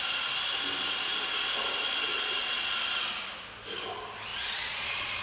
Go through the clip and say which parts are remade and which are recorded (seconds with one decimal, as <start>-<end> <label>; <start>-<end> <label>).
0.0-2.1 recorded; 2.1-2.8 remade; 2.8-4.3 recorded; 4.3-5.2 remade